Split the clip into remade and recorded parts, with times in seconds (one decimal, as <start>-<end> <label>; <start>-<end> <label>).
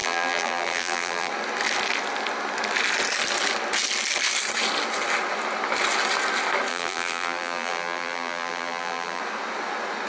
0.0-1.3 remade; 1.3-6.7 recorded; 6.7-9.2 remade; 9.2-10.1 recorded